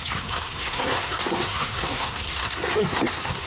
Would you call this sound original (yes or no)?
no